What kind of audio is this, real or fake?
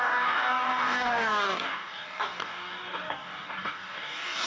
fake